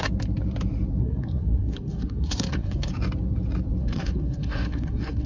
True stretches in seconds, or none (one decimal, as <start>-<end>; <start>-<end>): 0.0-1.0; 2.9-3.8